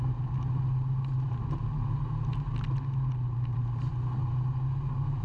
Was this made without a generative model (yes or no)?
yes